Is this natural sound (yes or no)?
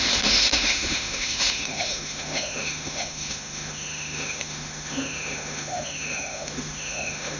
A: no